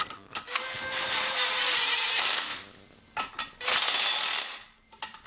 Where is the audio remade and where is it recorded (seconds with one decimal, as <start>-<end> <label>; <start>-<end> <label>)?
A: 0.0-0.6 remade; 0.6-5.3 recorded